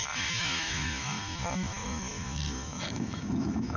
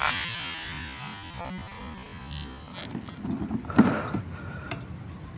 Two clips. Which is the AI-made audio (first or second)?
first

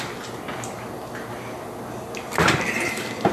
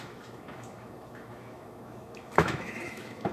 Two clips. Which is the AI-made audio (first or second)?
second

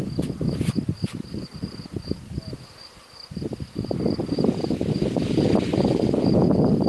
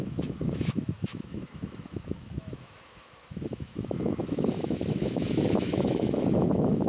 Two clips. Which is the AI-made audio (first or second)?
second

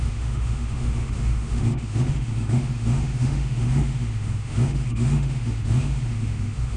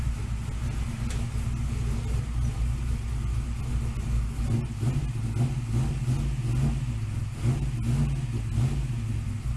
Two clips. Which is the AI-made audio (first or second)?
first